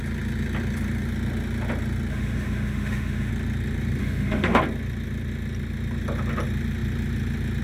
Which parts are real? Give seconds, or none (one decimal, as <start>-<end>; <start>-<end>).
0.0-2.1; 3.3-4.0; 4.6-7.6